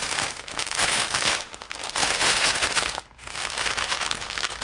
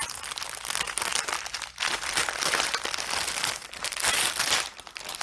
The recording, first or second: second